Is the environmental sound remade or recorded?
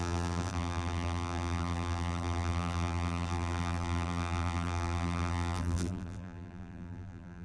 remade